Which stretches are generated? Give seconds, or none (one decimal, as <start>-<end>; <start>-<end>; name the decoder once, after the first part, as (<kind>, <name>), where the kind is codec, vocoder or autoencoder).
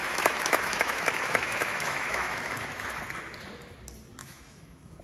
0.0-3.0 (autoencoder, DAC-VAE); 4.2-5.0